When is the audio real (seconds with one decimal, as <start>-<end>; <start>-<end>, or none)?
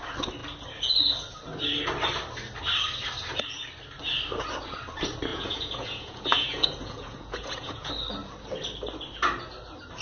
0.0-5.3; 7.9-10.0